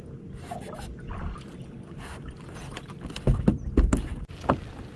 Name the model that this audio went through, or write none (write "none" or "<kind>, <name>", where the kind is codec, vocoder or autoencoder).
none